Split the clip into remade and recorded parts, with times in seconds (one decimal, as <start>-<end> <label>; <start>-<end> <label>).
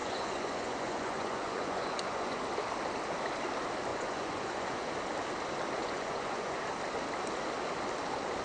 0.0-2.4 remade; 2.4-3.9 recorded; 3.9-4.9 remade; 4.9-5.8 recorded; 5.8-6.6 remade; 6.6-8.4 recorded